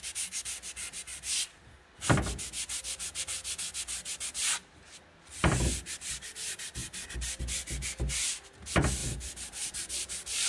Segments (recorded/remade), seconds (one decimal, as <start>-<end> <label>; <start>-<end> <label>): 0.0-9.0 recorded; 9.0-10.5 remade